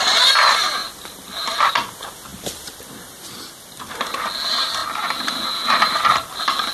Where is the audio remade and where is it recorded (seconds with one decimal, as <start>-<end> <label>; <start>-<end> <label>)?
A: 0.0-0.8 recorded; 0.8-1.7 remade; 1.7-2.3 recorded; 2.3-3.4 remade; 3.4-4.8 recorded; 4.8-5.4 remade; 5.4-6.7 recorded